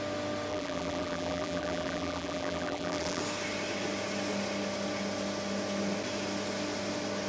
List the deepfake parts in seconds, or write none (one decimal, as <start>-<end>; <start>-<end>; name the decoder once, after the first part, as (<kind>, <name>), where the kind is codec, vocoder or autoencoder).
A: 0.5-3.2 (vocoder, BigVGAN v2)